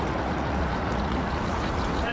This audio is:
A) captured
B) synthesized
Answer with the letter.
B